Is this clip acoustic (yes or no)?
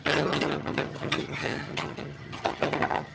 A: no